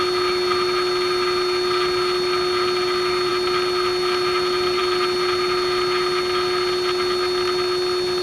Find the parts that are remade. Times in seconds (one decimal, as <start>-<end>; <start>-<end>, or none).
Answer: none